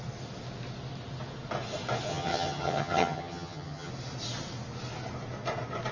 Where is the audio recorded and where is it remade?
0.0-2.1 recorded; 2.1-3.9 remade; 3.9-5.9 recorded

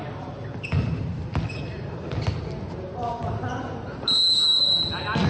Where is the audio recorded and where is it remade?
0.0-5.3 recorded